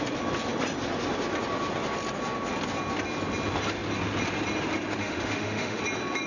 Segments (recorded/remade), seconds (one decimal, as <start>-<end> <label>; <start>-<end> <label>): 0.0-5.0 recorded; 5.0-5.8 remade; 5.8-6.3 recorded